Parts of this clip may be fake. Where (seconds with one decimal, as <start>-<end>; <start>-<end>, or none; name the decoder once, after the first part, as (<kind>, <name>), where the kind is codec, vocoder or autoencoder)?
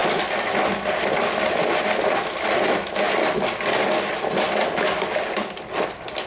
none